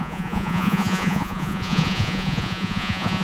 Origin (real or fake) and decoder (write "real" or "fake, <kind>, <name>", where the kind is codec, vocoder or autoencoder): fake, vocoder, Vocos